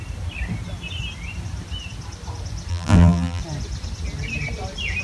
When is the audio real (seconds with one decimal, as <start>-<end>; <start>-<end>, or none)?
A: 0.0-2.7; 3.4-5.0